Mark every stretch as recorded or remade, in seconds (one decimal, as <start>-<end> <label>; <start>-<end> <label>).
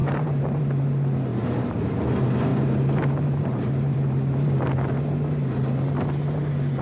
0.0-0.6 remade; 0.6-1.3 recorded; 1.3-1.9 remade; 1.9-2.5 recorded; 2.5-4.9 remade; 4.9-6.8 recorded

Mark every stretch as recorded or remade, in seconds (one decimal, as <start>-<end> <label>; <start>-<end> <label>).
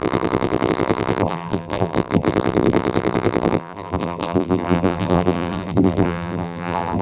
0.0-7.0 remade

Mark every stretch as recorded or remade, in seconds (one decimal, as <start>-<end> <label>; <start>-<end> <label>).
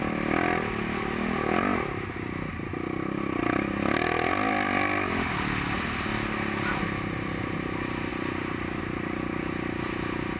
0.0-8.1 recorded; 8.1-8.8 remade; 8.8-10.4 recorded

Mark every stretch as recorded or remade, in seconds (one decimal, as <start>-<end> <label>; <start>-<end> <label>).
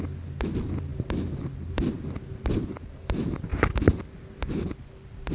0.0-0.9 recorded; 0.9-1.9 remade; 1.9-5.3 recorded